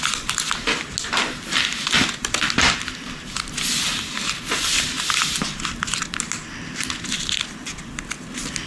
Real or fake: real